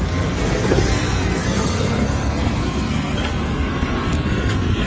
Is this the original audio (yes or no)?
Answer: no